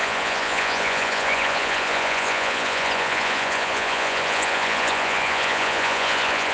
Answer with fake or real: fake